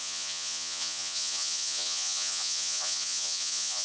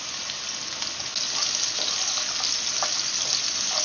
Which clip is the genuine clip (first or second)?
second